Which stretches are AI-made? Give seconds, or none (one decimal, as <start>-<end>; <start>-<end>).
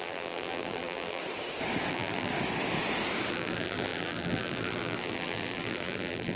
0.0-1.2; 1.9-2.3; 3.3-6.4